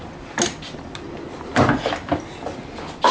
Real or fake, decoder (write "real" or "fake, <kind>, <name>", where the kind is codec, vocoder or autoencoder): real